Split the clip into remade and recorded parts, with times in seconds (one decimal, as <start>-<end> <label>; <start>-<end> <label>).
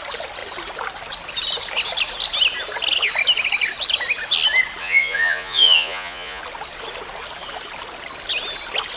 0.0-4.8 recorded; 4.8-6.4 remade; 6.4-9.0 recorded